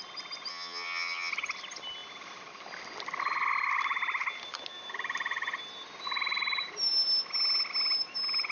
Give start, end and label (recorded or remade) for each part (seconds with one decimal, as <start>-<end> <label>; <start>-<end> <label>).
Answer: 0.0-0.5 recorded; 0.5-1.3 remade; 1.3-8.5 recorded